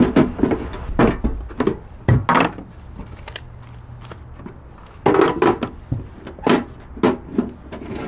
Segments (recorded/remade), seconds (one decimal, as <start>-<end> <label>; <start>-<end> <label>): 0.0-8.1 recorded